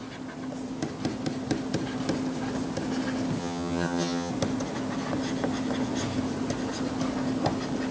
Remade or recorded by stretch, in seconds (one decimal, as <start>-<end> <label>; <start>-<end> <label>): 0.0-3.4 recorded; 3.4-4.3 remade; 4.3-7.9 recorded